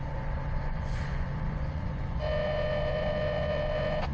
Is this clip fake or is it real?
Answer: fake